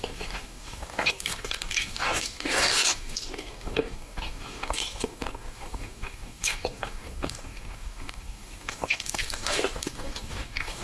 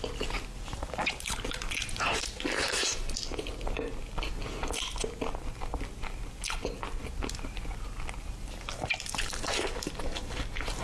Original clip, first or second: second